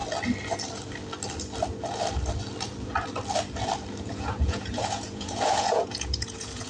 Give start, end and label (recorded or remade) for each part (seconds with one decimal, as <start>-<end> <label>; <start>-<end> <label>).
0.0-4.0 recorded; 4.0-6.7 remade